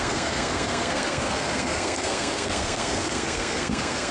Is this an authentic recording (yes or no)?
no